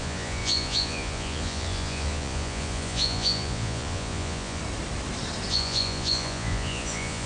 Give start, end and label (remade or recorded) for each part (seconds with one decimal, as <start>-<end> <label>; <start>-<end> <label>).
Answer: 0.0-4.6 remade; 4.6-5.5 recorded; 5.5-7.3 remade